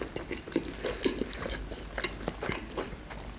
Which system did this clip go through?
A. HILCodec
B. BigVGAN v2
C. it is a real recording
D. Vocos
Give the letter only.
C